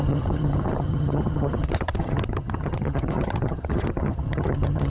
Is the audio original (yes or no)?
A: no